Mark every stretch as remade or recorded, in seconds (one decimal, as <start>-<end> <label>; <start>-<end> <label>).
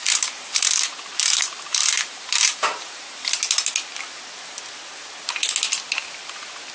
0.0-3.7 remade; 3.7-6.7 recorded